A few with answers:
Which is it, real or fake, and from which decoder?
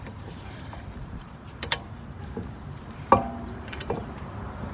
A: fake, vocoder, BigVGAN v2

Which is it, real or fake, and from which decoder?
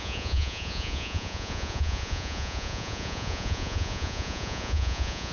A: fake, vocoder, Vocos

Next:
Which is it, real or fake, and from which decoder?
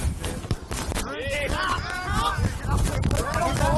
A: real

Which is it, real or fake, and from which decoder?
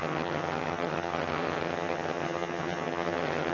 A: fake, vocoder, HiFi-GAN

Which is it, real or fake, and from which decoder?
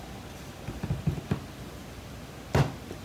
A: real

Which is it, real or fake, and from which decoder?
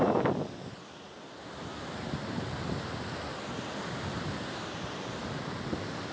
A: real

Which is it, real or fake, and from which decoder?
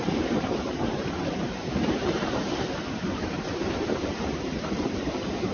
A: fake, vocoder, BigVGAN v2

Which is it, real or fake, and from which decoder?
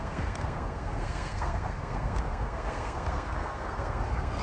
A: fake, codec, SNAC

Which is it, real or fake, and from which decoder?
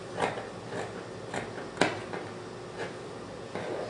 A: real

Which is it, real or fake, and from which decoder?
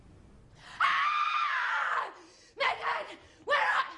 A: real